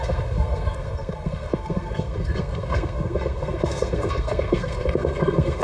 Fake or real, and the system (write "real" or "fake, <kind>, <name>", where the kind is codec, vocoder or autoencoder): fake, codec, SNAC